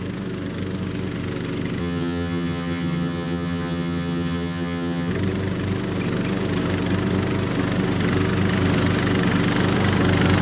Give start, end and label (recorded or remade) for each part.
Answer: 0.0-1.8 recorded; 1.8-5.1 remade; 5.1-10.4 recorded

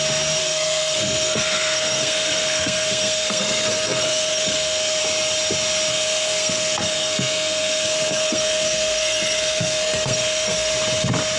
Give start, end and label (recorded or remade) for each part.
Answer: 0.0-0.4 recorded; 0.4-5.0 remade; 5.0-5.9 recorded; 5.9-10.7 remade; 10.7-11.4 recorded

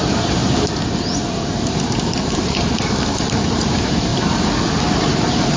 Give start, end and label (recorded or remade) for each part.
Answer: 0.0-0.4 remade; 0.4-1.3 recorded; 1.3-4.1 remade; 4.1-5.0 recorded; 5.0-5.6 remade

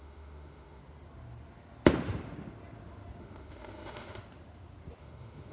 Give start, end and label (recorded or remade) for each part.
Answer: 0.0-0.8 remade; 0.8-3.2 recorded; 3.2-4.2 remade; 4.2-5.0 recorded; 5.0-5.5 remade